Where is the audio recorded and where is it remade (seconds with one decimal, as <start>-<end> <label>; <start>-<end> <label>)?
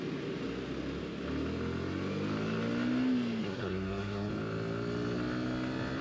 0.0-3.4 recorded; 3.4-4.3 remade; 4.3-6.0 recorded